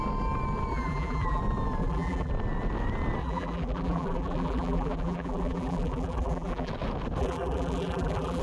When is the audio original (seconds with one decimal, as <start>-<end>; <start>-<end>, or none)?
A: 0.0-0.7; 1.4-1.8; 2.3-3.2; 6.7-7.2